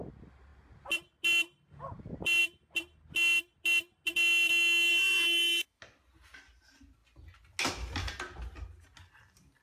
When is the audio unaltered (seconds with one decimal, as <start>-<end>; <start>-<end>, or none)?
0.0-4.9; 5.8-9.6